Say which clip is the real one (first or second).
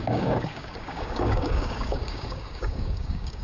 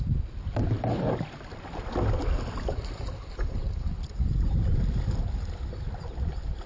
second